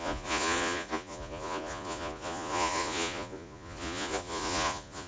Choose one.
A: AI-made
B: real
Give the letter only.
A